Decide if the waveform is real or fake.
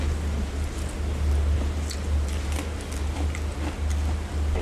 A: real